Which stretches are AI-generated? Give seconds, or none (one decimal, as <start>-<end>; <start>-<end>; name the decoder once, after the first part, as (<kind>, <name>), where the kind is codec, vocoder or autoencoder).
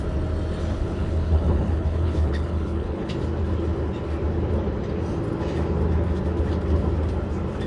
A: 0.6-3.1 (codec, HILCodec)